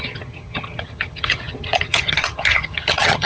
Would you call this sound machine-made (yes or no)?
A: yes